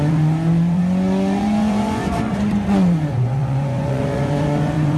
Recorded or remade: remade